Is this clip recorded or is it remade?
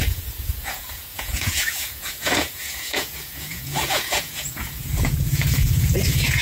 remade